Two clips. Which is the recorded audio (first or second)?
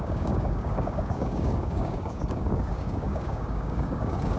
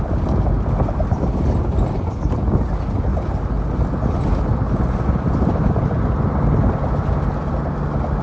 second